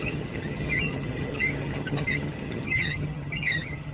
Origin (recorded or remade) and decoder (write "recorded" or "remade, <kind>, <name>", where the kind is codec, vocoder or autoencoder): remade, vocoder, HiFi-GAN